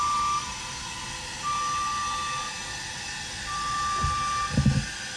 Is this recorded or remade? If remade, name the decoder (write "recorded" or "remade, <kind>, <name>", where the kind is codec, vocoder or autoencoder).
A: recorded